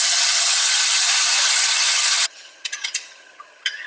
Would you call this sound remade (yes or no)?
yes